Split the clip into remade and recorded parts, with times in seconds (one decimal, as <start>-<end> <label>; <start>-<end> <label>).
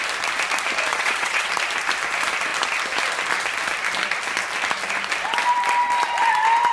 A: 0.0-0.9 recorded; 0.9-1.5 remade; 1.5-6.7 recorded